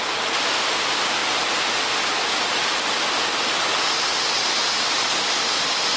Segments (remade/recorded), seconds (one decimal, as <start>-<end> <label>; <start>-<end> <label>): 0.0-6.0 recorded